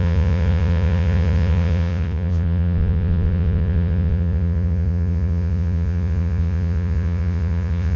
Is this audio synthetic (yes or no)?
yes